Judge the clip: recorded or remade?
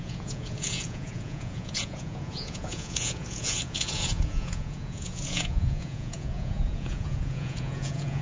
remade